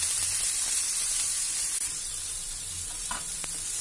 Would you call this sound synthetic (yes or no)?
yes